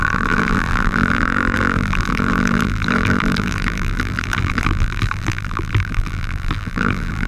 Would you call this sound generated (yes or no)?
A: yes